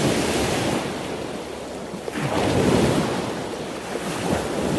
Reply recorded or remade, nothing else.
recorded